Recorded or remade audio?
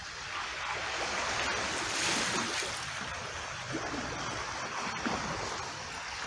recorded